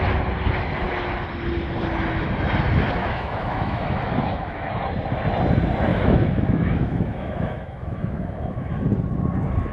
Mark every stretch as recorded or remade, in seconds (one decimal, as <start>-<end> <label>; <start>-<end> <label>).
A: 0.0-3.0 recorded; 3.0-4.7 remade; 4.7-5.9 recorded; 5.9-8.7 remade; 8.7-9.7 recorded